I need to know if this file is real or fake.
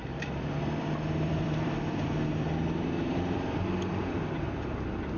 fake